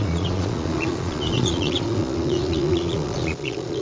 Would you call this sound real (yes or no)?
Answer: no